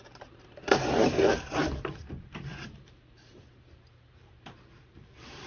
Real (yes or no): no